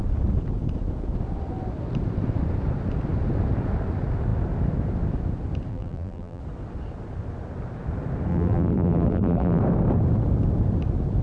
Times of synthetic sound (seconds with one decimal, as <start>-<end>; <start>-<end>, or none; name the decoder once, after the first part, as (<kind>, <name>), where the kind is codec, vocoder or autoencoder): 5.7-6.4 (vocoder, BigVGAN v2); 8.3-9.6